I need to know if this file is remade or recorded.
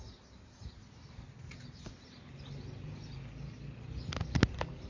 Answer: recorded